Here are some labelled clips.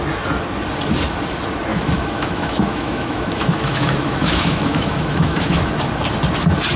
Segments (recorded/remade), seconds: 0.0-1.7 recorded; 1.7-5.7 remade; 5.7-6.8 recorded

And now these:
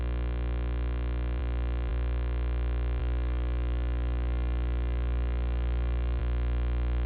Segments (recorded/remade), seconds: 0.0-3.0 recorded; 3.0-6.2 remade; 6.2-7.1 recorded

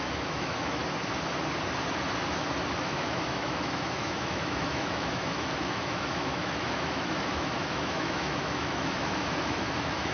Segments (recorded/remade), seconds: 0.0-0.8 remade; 0.8-2.8 recorded; 2.8-10.1 remade

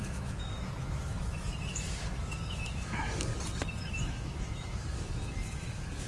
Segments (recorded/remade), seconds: 0.0-3.3 remade; 3.3-3.9 recorded; 3.9-6.1 remade

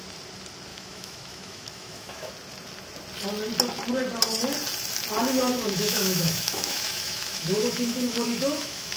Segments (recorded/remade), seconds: 0.0-0.7 recorded; 0.7-2.3 remade; 2.3-5.2 recorded; 5.2-9.0 remade

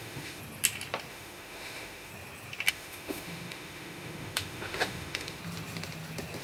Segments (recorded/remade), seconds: 0.0-0.4 remade; 0.4-1.1 recorded; 1.1-2.1 remade; 2.1-2.7 recorded; 2.7-5.4 remade; 5.4-6.4 recorded

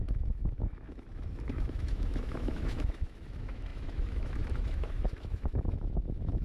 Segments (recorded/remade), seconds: 0.0-6.4 remade